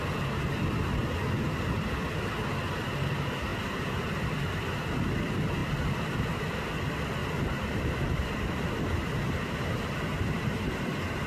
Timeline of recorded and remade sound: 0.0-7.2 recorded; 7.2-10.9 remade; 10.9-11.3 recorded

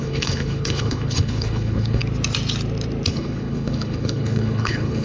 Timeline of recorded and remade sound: 0.0-2.0 remade; 2.0-3.1 recorded; 3.1-5.0 remade

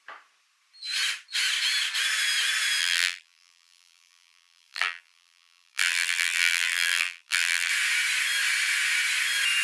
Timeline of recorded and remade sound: 0.0-2.8 recorded; 2.8-7.7 remade; 7.7-9.6 recorded

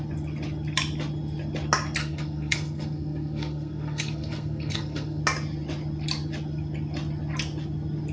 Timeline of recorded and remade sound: 0.0-2.0 recorded; 2.0-5.2 remade; 5.2-8.1 recorded

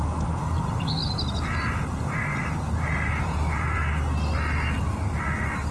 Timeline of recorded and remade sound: 0.0-3.8 remade; 3.8-5.7 recorded